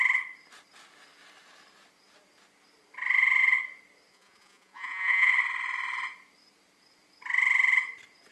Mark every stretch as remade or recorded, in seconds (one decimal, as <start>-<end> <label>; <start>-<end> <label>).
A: 0.0-4.1 recorded; 4.1-5.3 remade; 5.3-8.3 recorded